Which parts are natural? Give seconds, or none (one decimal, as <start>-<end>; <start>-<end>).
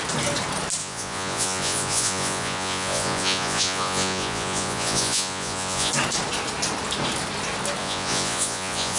0.0-0.8; 5.9-7.8